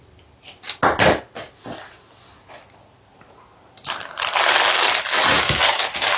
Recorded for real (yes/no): yes